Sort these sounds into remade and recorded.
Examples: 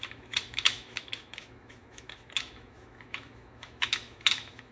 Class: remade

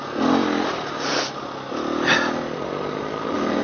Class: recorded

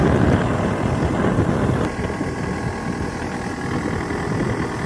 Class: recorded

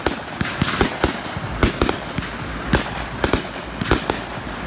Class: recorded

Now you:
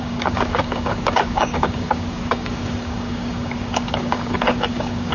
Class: remade